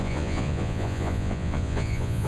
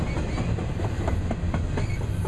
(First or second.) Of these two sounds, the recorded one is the second